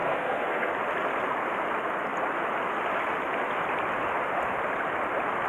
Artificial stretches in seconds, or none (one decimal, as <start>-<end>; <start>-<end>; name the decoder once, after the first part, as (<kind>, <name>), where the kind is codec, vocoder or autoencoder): 0.0-0.7 (codec, SNAC)